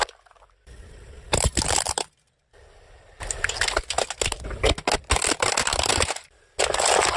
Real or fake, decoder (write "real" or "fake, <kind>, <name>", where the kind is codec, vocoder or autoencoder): real